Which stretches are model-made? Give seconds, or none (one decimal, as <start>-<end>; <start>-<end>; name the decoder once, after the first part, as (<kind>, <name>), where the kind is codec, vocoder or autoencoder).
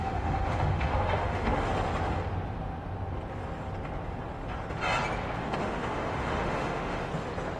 0.0-1.7 (autoencoder, DAC-VAE); 5.4-7.1